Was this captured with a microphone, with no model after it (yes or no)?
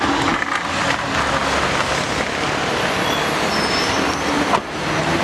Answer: yes